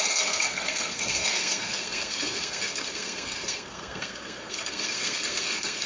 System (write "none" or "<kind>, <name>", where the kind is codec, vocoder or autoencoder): codec, SNAC